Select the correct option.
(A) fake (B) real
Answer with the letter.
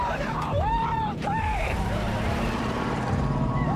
A